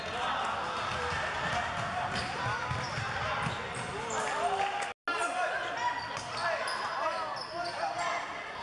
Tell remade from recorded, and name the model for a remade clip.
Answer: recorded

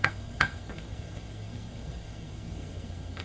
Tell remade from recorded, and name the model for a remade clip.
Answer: remade, codec, SNAC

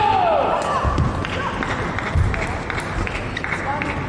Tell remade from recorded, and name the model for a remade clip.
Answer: recorded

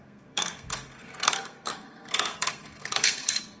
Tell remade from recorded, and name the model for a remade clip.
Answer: remade, codec, SNAC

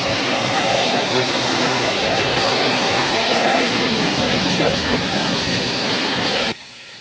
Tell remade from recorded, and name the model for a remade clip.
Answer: remade, codec, SNAC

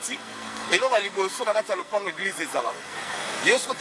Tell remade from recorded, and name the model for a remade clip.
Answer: remade, codec, SNAC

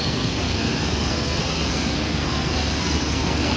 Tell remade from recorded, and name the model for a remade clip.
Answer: remade, codec, SNAC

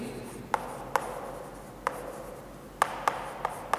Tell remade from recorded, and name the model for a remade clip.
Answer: recorded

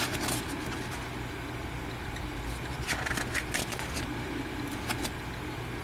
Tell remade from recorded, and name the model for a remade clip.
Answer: recorded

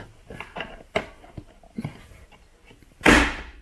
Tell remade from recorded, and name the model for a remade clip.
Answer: recorded